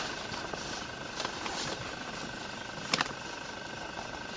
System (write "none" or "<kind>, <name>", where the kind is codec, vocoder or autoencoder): none